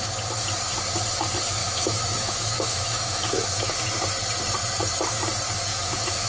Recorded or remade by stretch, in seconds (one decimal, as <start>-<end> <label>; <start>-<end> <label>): 0.0-1.6 recorded; 1.6-3.7 remade; 3.7-5.7 recorded; 5.7-6.3 remade